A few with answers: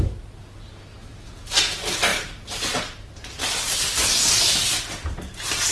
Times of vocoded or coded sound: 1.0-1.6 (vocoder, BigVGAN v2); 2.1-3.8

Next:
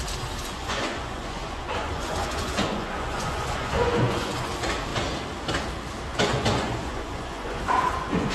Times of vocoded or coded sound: 0.4-4.5 (vocoder, Vocos); 6.1-8.3

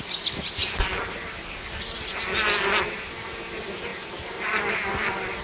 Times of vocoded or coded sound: none

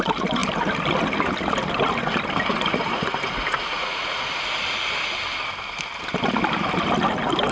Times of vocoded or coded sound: 2.5-4.4 (vocoder, Vocos)